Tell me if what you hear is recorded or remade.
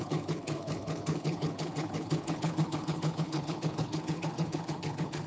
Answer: remade